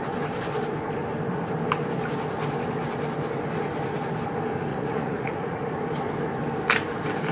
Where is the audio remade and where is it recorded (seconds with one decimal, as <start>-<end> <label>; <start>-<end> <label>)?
0.0-4.7 recorded; 4.7-5.7 remade; 5.7-7.3 recorded